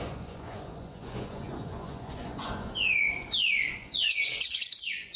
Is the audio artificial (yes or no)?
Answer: yes